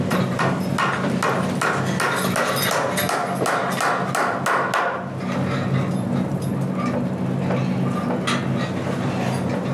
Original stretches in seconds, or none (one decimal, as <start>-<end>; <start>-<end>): 0.0-9.7